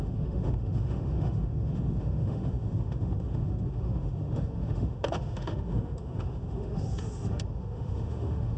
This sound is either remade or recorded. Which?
remade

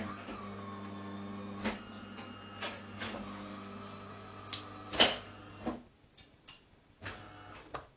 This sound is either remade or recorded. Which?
recorded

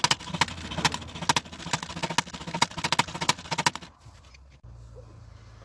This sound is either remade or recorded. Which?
recorded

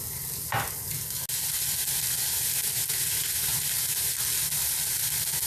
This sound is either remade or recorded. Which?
recorded